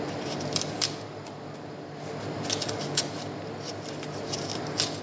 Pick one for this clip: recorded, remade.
recorded